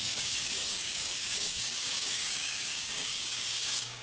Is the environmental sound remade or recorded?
remade